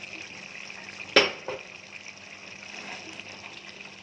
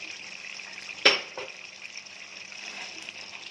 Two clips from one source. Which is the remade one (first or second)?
second